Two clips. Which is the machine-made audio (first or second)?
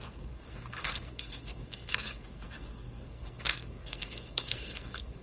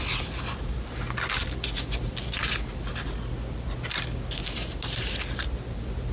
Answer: first